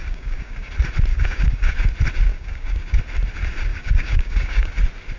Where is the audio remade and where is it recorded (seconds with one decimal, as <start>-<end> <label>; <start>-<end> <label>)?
0.0-0.7 remade; 0.7-1.1 recorded; 1.1-1.9 remade; 1.9-2.3 recorded; 2.3-3.0 remade; 3.0-3.7 recorded; 3.7-4.7 remade; 4.7-5.2 recorded